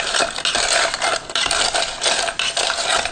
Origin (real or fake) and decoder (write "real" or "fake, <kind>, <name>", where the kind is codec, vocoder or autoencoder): real